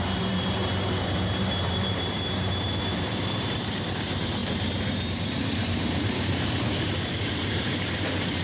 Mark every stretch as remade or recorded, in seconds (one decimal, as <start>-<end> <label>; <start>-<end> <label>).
0.0-8.4 remade